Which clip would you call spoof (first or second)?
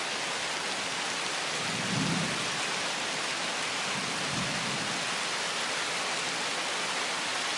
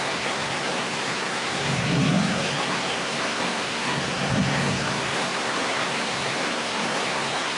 second